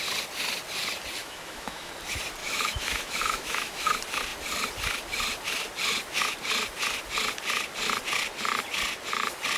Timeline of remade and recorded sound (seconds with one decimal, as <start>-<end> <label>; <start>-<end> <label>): 0.0-1.2 recorded; 1.2-1.9 remade; 1.9-2.4 recorded; 2.4-3.9 remade; 3.9-9.6 recorded